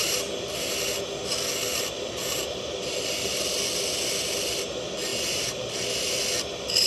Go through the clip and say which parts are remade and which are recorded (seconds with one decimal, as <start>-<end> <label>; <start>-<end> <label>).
0.0-1.7 recorded; 1.7-3.6 remade; 3.6-5.1 recorded; 5.1-5.7 remade; 5.7-6.9 recorded